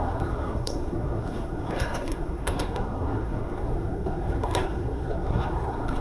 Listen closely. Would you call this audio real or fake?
fake